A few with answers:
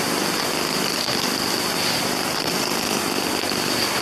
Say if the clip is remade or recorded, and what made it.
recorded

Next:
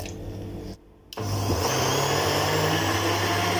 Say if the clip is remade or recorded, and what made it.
recorded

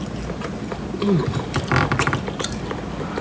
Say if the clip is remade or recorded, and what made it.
recorded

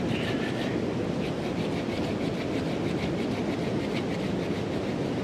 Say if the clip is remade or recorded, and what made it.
recorded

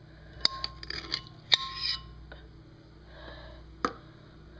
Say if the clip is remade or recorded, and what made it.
recorded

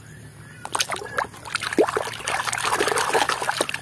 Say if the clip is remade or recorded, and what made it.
recorded